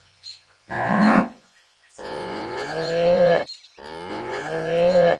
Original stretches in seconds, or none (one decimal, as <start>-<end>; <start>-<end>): 3.4-4.1